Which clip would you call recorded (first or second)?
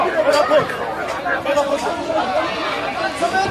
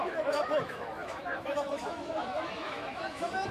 first